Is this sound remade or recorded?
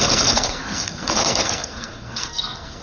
remade